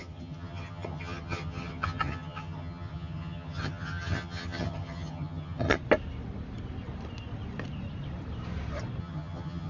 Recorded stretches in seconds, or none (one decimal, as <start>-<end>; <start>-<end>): 5.8-9.0